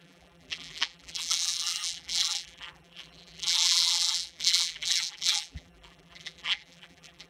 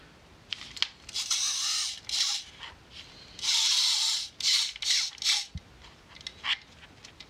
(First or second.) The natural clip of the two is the second